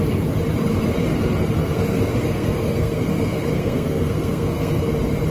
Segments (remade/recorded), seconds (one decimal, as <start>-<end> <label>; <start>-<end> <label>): 0.0-1.6 recorded; 1.6-4.8 remade; 4.8-5.3 recorded